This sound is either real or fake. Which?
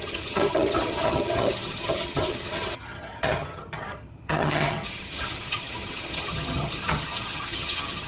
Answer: fake